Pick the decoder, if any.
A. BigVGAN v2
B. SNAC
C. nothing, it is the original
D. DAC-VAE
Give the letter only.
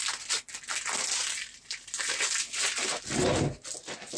C